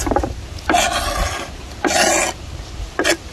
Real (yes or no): yes